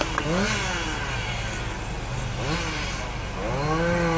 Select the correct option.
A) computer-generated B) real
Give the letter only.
B